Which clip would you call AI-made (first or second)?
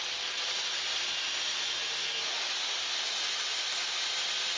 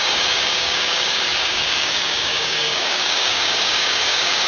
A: second